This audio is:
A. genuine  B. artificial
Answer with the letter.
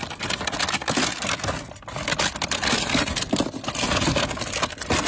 A